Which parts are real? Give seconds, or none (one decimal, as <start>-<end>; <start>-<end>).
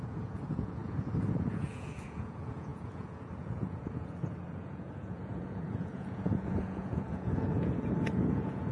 none